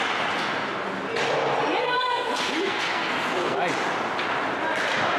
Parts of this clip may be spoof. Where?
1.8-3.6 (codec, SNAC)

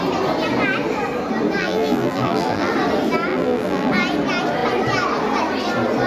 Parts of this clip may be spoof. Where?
1.6-2.7 (vocoder, BigVGAN v2); 3.3-3.9

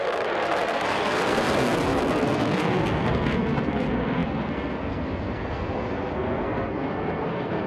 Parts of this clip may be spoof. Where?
0.0-7.7 (codec, SNAC)